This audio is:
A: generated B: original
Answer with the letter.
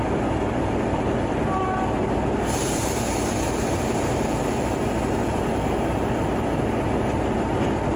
A